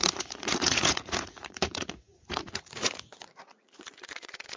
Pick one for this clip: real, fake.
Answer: fake